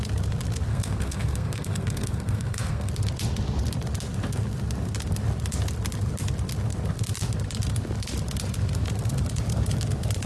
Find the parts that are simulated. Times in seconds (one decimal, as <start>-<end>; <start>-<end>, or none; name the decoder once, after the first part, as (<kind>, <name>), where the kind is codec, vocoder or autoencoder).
0.7-2.9 (codec, SNAC)